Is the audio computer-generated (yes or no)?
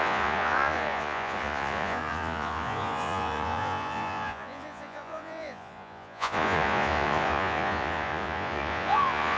yes